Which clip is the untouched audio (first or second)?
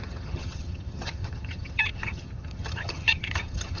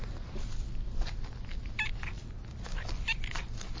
second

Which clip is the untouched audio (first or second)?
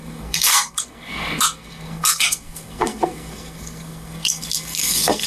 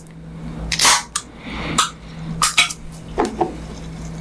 second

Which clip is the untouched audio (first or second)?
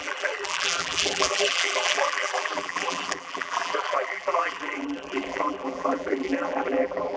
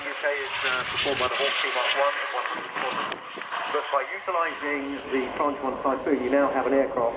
second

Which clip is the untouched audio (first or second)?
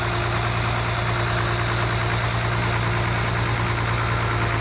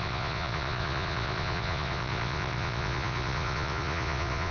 first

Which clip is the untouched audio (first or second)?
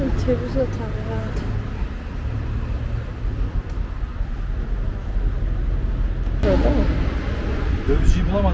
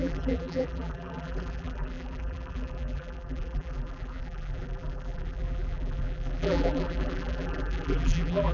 first